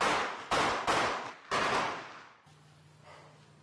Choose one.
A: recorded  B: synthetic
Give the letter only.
A